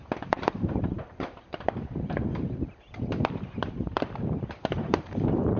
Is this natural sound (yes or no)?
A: no